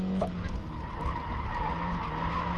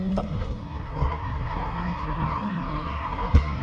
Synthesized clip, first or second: second